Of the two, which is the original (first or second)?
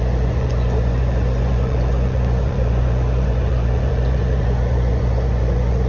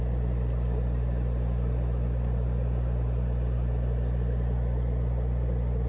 second